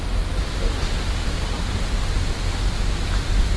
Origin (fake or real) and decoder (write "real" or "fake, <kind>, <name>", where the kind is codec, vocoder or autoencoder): real